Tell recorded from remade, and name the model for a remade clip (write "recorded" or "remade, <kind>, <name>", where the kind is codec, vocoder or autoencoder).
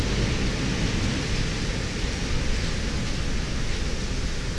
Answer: recorded